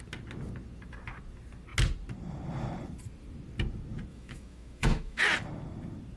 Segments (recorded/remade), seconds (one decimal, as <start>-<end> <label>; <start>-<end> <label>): 0.0-4.1 recorded; 4.1-5.2 remade; 5.2-6.2 recorded